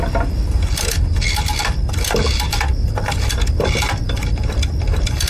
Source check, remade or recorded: recorded